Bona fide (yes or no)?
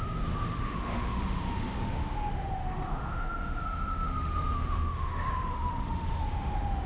no